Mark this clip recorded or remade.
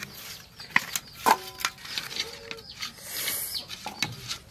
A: recorded